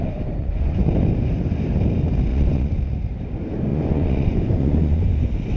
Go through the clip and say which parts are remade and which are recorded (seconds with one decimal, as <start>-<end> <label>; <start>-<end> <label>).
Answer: 0.0-0.4 recorded; 0.4-0.9 remade; 0.9-2.3 recorded; 2.3-2.8 remade; 2.8-3.7 recorded; 3.7-5.1 remade; 5.1-5.6 recorded